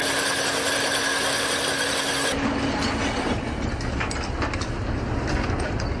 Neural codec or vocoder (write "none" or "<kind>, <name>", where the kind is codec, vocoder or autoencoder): none